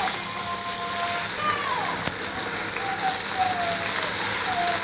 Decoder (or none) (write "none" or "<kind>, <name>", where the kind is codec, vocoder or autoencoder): none